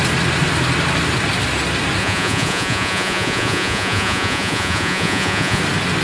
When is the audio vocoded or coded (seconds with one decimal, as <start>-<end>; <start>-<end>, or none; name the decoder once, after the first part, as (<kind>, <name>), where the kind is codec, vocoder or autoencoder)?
2.0-5.6 (vocoder, Vocos)